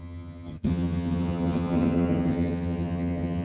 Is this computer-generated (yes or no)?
yes